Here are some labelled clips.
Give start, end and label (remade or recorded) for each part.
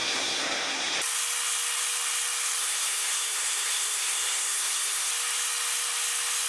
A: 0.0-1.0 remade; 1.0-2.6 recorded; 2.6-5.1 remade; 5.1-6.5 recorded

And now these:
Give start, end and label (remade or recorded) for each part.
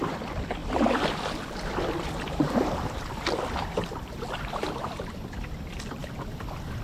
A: 0.0-6.8 remade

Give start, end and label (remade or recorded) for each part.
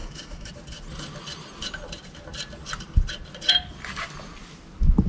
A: 0.0-0.5 remade; 0.5-5.1 recorded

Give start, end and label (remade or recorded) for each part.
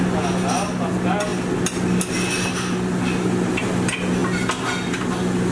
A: 0.0-5.5 recorded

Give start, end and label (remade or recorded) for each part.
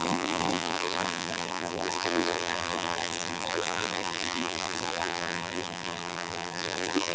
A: 0.0-7.1 remade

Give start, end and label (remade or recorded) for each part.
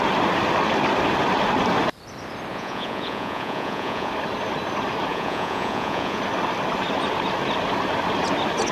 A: 0.0-2.5 recorded; 2.5-4.1 remade; 4.1-5.1 recorded; 5.1-6.2 remade; 6.2-8.7 recorded